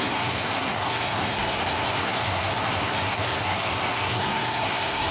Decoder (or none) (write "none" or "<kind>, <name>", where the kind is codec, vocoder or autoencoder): codec, SNAC